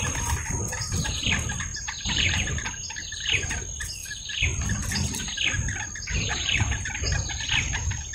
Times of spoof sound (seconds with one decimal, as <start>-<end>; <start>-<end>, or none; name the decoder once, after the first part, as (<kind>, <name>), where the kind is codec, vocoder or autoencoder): 1.7-3.5 (vocoder, BigVGAN v2); 6.4-6.9